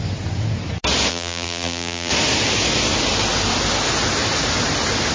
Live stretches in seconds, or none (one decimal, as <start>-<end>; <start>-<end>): 0.0-1.1; 2.1-5.1